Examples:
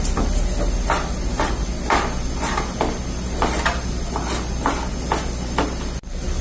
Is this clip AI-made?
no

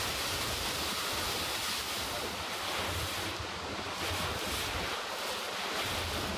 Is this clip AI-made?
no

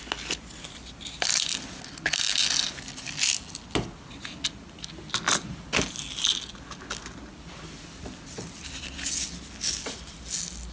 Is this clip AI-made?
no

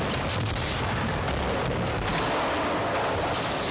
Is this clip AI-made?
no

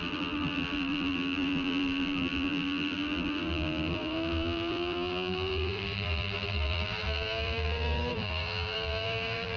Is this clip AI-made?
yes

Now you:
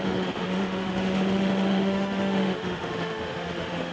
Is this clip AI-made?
yes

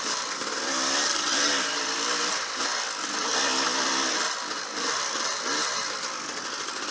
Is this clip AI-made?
yes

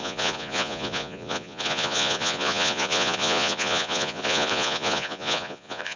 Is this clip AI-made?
yes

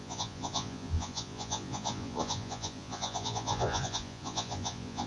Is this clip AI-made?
yes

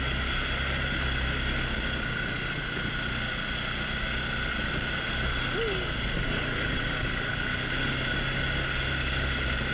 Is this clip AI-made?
no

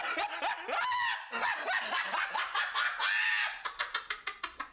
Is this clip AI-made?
no